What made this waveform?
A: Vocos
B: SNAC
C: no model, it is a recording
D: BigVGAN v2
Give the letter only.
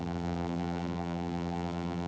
D